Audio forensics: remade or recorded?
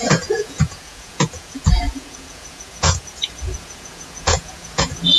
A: remade